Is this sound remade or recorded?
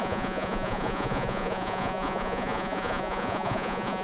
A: remade